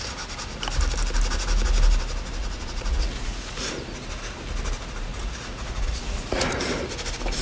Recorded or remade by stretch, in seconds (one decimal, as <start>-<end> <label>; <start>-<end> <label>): 0.0-2.4 recorded; 2.4-3.7 remade; 3.7-5.1 recorded; 5.1-6.6 remade; 6.6-7.4 recorded